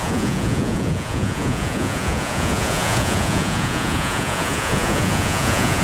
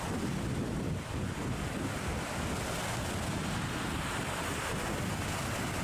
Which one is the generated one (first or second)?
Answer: first